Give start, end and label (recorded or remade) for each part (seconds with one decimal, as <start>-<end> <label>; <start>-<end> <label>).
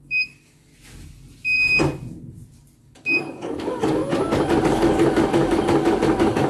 0.0-0.7 remade; 0.7-2.8 recorded; 2.8-4.0 remade; 4.0-4.6 recorded; 4.6-6.5 remade